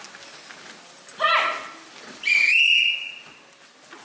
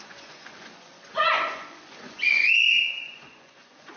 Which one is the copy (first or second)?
second